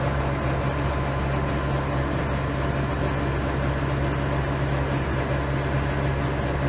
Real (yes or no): yes